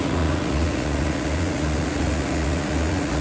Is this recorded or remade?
remade